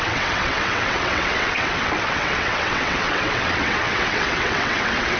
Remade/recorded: remade